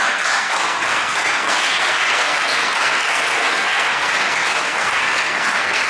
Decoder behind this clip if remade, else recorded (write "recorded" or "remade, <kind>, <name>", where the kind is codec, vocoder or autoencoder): remade, codec, SNAC